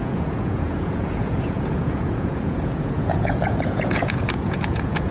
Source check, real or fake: fake